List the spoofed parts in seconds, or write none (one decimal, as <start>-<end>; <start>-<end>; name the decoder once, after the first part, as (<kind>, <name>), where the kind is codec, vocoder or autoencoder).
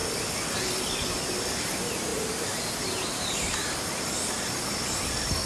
2.1-4.0 (vocoder, BigVGAN v2)